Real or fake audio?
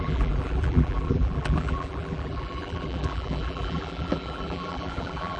fake